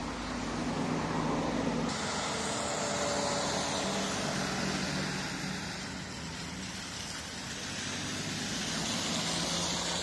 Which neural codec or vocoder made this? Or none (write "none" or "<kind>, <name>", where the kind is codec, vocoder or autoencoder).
none